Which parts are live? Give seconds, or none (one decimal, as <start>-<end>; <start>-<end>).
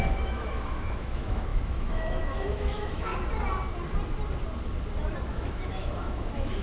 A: 3.1-5.3